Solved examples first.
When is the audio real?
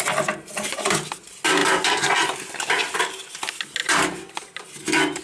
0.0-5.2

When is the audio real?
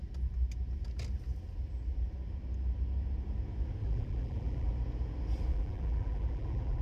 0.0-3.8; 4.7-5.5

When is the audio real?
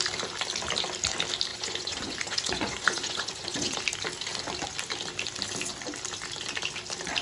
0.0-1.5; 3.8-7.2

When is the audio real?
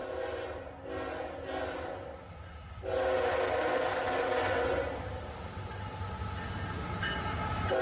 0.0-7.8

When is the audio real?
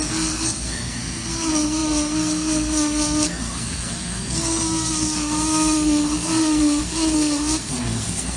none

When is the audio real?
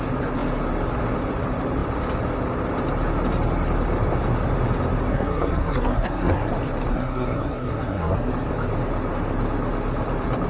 0.0-5.1; 6.5-6.9; 8.3-10.5